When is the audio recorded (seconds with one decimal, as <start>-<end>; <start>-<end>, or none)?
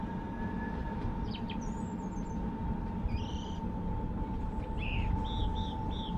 0.0-0.8; 1.3-3.3; 5.2-6.2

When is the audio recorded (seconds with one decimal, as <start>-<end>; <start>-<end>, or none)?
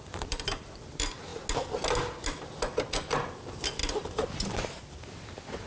1.3-3.3; 3.8-5.0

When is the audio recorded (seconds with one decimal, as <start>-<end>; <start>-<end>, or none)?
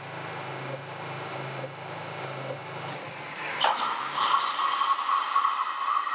0.0-3.5; 5.6-6.1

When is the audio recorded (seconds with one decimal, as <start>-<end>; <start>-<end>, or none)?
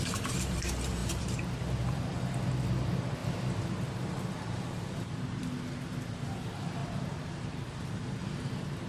0.0-1.0; 2.1-3.2; 6.1-6.8; 8.5-8.9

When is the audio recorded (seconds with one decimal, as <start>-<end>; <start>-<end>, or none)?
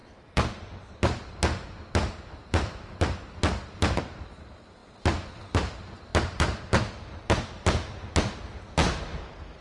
0.0-2.4; 3.0-6.1; 6.6-9.6